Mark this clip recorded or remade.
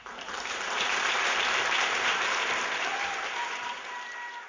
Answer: remade